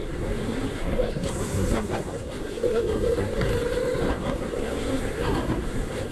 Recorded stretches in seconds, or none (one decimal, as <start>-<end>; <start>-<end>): 3.5-4.1